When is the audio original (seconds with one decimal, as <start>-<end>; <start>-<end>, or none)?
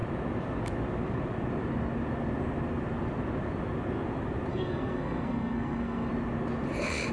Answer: 0.0-4.5; 6.1-7.1